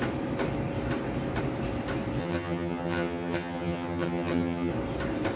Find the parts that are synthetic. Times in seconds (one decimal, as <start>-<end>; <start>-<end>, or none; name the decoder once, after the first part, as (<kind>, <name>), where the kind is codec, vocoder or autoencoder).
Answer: 2.2-4.7 (vocoder, HiFi-GAN)